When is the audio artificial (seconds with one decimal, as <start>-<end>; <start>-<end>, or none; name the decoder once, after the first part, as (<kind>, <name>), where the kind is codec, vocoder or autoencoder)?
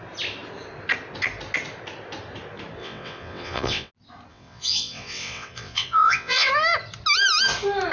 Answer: 2.8-3.9 (vocoder, WaveNeXt); 4.3-6.5